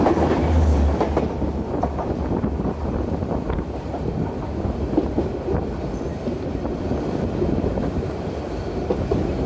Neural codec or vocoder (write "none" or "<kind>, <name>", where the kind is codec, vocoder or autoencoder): none